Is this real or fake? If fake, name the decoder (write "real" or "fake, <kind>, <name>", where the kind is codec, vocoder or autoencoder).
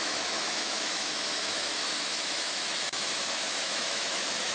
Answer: fake, autoencoder, DAC-VAE